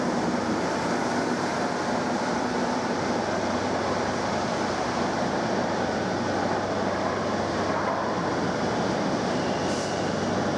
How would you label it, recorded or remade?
remade